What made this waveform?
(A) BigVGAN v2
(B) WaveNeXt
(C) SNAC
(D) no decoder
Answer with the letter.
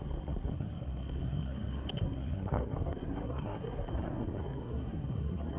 C